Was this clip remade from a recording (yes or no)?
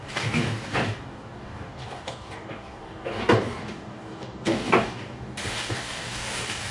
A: yes